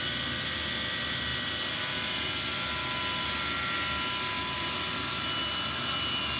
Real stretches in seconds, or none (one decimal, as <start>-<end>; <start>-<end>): 0.0-6.4